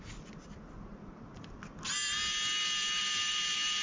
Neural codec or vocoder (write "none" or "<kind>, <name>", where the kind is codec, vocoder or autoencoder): none